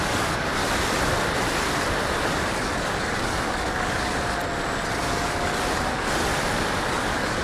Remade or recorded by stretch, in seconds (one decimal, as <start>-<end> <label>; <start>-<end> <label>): 0.0-0.6 remade; 0.6-2.2 recorded; 2.2-4.4 remade; 4.4-5.0 recorded; 5.0-6.3 remade; 6.3-6.9 recorded; 6.9-7.4 remade